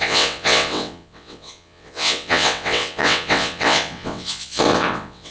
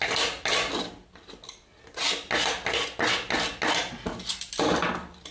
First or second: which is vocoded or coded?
first